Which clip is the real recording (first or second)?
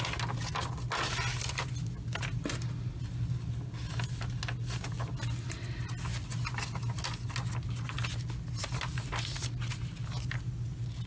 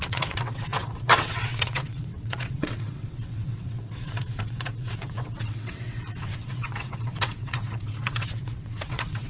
first